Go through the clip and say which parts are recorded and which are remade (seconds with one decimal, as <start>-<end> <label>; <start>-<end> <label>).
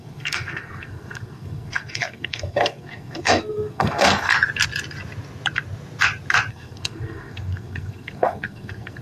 0.0-4.3 remade; 4.3-6.5 recorded; 6.5-9.0 remade